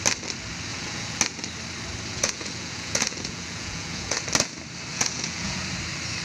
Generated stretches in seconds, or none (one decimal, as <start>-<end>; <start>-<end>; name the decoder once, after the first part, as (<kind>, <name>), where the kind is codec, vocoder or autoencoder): 0.7-1.2 (vocoder, Vocos); 2.1-4.2; 4.9-5.6